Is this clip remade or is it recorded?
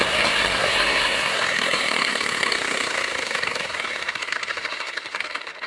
remade